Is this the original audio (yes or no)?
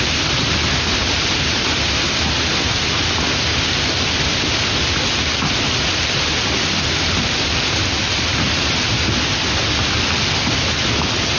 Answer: yes